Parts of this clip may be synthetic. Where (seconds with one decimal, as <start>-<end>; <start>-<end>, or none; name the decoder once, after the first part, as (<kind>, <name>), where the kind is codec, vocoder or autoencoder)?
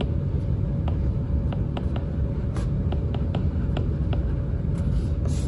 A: none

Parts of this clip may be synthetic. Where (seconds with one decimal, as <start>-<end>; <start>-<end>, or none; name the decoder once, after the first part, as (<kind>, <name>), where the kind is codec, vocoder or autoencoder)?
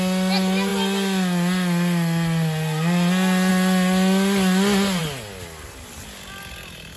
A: none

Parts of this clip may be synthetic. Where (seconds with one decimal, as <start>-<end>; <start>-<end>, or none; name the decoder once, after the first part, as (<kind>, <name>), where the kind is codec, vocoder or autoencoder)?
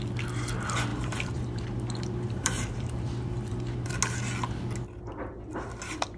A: 0.9-3.9 (vocoder, BigVGAN v2)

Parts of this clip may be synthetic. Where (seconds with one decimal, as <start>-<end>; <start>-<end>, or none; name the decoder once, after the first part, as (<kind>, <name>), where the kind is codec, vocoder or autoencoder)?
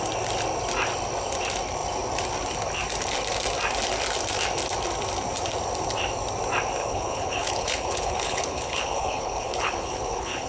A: 6.8-10.5 (codec, HILCodec)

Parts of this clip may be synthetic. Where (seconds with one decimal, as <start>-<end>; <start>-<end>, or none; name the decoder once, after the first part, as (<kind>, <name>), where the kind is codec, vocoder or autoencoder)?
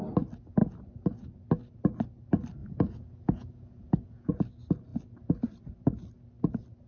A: 2.6-4.3 (vocoder, Vocos)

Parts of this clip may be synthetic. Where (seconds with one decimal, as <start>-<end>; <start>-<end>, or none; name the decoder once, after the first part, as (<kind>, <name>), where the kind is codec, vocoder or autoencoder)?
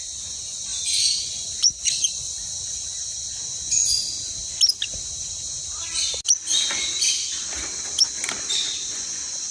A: 0.0-4.0 (vocoder, Vocos); 8.9-9.5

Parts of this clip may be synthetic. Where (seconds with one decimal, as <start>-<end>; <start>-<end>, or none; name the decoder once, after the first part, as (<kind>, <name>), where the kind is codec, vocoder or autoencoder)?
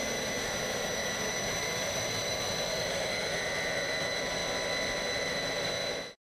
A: 0.0-4.4 (vocoder, BigVGAN v2); 5.0-6.3